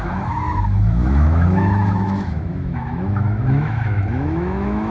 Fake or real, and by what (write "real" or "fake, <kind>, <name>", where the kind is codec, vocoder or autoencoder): fake, autoencoder, DAC-VAE